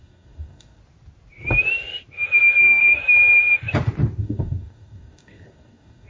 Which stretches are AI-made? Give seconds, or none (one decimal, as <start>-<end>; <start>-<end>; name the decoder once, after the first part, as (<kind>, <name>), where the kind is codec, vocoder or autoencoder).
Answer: 0.0-0.8 (codec, DAC); 2.6-3.0; 4.2-6.1

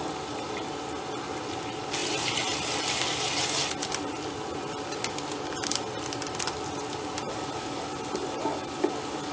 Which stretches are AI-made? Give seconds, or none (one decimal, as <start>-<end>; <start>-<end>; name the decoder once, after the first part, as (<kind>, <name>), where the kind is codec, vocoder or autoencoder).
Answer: none

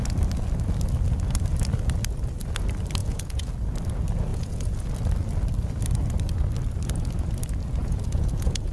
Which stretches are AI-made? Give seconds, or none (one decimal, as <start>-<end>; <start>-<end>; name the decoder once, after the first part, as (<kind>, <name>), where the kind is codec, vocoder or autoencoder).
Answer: 3.0-3.5 (vocoder, Vocos); 4.3-4.9; 7.8-8.7

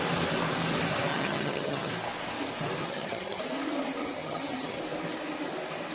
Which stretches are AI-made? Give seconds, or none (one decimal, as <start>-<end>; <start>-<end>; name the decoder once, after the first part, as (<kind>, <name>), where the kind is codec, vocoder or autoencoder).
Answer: 1.1-1.9 (vocoder, HiFi-GAN); 2.8-3.4; 4.0-4.8

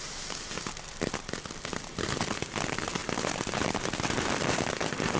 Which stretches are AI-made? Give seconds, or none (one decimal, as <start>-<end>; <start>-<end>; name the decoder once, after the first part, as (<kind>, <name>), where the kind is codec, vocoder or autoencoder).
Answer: none

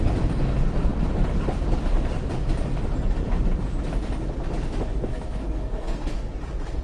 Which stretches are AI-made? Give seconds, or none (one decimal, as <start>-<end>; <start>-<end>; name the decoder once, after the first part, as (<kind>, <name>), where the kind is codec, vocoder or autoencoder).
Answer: 5.1-6.3 (codec, SNAC)

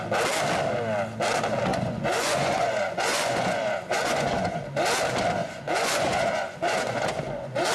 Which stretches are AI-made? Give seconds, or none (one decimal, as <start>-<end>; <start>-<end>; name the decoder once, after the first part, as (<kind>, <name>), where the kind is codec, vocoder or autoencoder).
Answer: 1.7-4.6 (vocoder, Vocos); 5.4-7.7